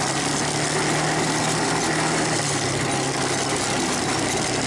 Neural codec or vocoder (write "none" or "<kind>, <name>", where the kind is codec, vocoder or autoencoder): none